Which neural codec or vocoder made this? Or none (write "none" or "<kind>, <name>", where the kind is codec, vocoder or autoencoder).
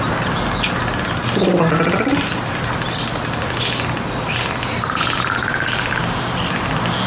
none